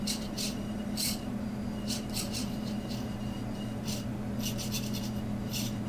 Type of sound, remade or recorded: remade